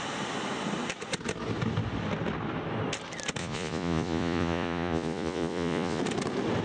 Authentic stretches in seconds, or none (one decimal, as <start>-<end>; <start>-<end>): 0.0-3.4; 6.0-6.6